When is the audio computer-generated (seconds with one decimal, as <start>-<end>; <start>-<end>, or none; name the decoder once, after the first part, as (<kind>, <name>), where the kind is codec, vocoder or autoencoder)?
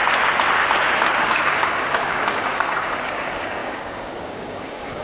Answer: 1.2-5.0 (codec, DAC)